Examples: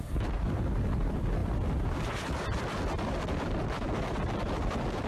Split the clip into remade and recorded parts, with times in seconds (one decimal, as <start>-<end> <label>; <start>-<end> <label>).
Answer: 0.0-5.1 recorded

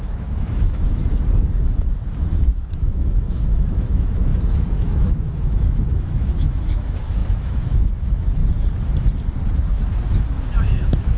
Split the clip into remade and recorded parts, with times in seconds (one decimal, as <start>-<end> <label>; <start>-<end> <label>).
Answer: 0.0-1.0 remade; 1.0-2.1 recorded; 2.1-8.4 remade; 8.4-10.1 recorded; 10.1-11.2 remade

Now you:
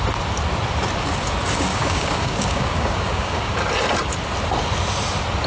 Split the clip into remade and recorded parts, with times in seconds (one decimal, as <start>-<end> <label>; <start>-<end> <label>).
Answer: 0.0-1.7 recorded; 1.7-3.5 remade; 3.5-5.5 recorded